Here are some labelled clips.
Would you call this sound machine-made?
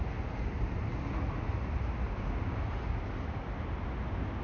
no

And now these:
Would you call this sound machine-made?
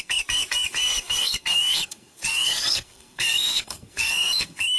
yes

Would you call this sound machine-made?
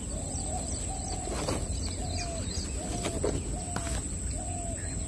no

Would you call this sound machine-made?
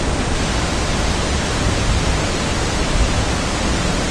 no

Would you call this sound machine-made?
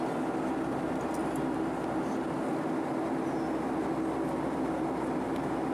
no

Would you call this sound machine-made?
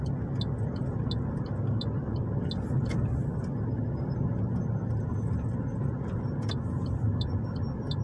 no